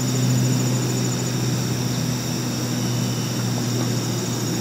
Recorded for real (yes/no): yes